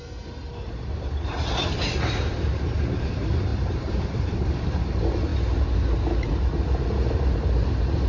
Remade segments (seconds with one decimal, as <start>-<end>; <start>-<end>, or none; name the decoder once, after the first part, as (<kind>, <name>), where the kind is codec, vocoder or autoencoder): 0.0-8.1 (vocoder, BigVGAN v2)